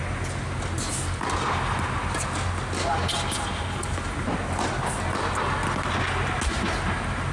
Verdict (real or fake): real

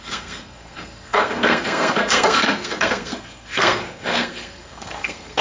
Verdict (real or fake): fake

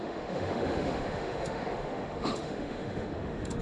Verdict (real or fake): fake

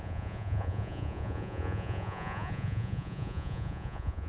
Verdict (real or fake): fake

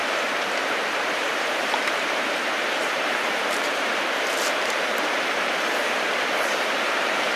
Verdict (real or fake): fake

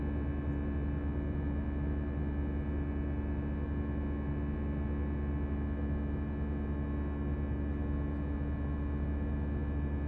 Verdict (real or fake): real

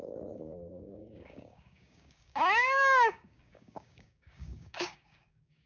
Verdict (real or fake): fake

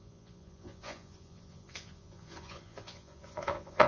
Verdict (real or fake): fake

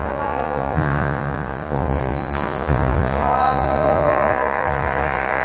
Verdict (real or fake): fake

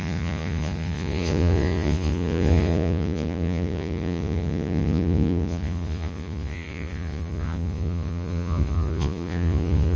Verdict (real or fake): fake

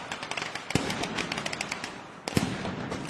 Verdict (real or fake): real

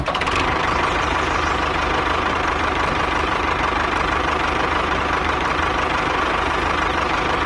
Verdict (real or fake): fake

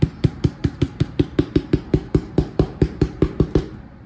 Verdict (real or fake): fake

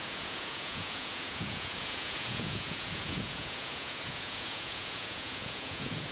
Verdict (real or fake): fake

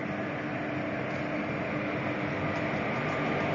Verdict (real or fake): real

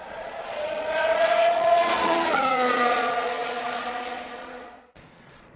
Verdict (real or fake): fake